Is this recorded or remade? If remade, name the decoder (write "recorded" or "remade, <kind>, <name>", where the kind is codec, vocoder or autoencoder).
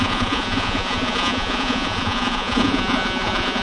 remade, vocoder, Vocos